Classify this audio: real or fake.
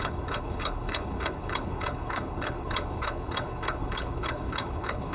fake